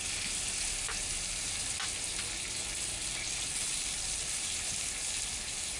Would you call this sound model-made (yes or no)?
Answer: no